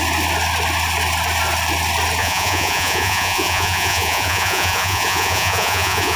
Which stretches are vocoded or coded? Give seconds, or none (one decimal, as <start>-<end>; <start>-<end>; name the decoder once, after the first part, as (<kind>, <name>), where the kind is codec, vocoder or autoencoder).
2.2-6.2 (vocoder, Vocos)